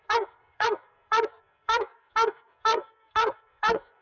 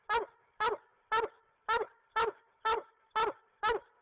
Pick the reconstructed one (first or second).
first